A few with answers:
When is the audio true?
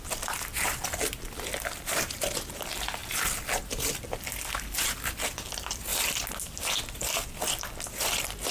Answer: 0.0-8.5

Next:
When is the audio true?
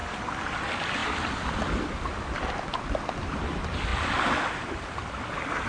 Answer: 0.6-1.0; 3.5-5.7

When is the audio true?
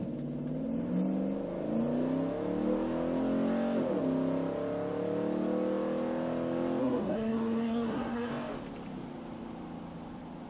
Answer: 0.0-6.8; 8.3-10.5